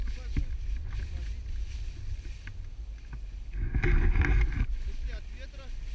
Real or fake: real